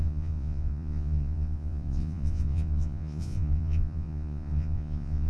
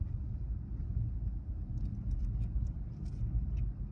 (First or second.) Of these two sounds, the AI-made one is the first